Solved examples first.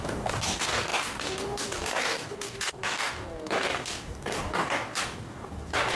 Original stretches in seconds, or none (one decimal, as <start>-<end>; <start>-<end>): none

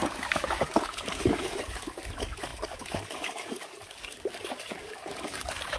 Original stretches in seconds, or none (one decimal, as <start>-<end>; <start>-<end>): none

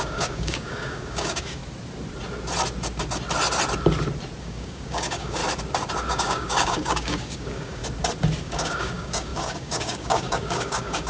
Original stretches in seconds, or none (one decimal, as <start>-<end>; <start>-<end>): 1.6-4.4; 5.4-6.1; 7.8-8.4